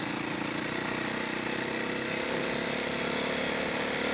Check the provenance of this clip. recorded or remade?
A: recorded